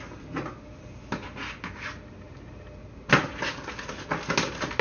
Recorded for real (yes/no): yes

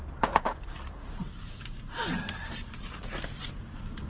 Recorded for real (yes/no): no